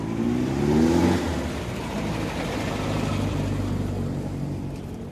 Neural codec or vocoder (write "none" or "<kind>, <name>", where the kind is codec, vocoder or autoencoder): none